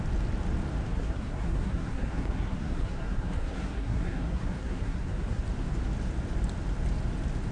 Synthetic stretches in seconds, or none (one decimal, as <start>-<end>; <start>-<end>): 0.9-5.4